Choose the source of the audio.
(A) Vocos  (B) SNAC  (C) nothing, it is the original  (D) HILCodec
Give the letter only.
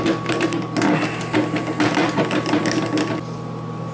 C